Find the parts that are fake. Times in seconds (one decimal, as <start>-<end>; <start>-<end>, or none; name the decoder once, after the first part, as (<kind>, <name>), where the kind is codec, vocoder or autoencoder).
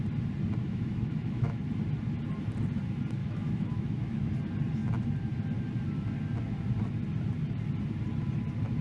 0.7-1.6 (autoencoder, DAC-VAE); 3.2-4.3